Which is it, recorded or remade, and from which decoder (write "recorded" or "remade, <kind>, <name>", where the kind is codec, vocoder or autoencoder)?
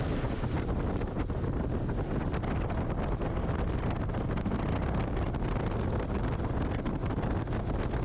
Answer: recorded